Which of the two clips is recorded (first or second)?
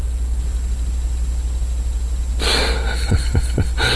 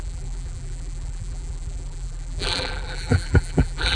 first